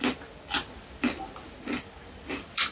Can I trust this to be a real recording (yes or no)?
yes